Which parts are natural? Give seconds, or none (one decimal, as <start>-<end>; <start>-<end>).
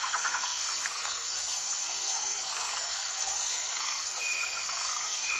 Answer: none